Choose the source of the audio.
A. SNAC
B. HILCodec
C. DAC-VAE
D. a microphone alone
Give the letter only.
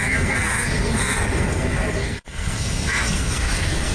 A